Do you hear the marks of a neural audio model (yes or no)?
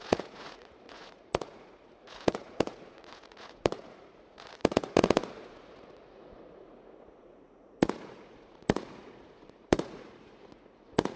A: yes